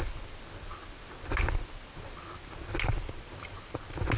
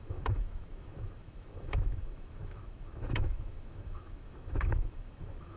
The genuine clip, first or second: first